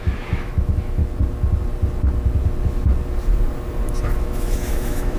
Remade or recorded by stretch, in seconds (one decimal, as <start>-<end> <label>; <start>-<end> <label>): 0.0-1.0 remade; 1.0-4.1 recorded; 4.1-5.2 remade